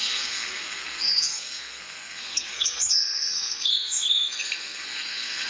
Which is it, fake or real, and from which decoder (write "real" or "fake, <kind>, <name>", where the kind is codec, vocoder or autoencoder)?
fake, codec, SNAC